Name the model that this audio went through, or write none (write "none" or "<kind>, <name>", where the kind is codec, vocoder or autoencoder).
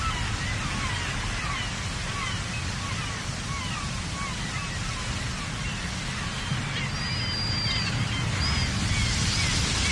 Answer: none